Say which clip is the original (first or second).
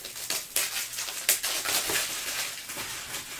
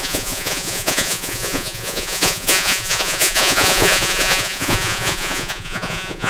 first